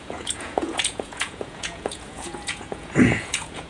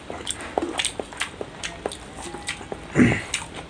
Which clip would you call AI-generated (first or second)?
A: first